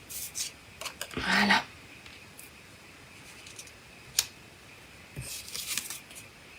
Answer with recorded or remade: recorded